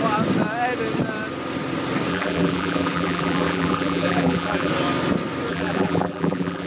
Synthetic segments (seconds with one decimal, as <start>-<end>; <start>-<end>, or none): 2.1-4.7; 5.5-6.7